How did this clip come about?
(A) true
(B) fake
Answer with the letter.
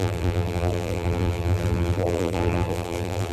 B